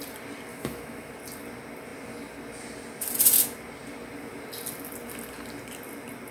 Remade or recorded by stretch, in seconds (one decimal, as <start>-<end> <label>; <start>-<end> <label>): 0.0-0.5 recorded; 0.5-1.1 remade; 1.1-6.3 recorded